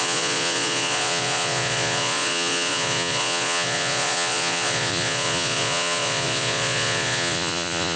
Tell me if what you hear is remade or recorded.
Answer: remade